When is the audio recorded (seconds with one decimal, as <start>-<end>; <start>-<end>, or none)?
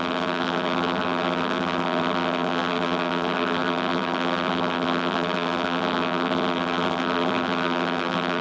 none